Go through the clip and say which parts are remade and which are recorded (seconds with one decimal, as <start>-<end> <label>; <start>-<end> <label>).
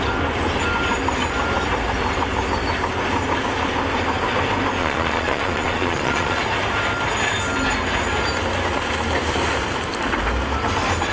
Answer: 0.0-4.8 recorded; 4.8-6.4 remade; 6.4-11.1 recorded